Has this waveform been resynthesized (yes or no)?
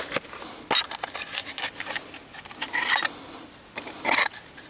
no